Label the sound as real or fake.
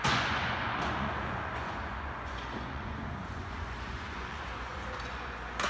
fake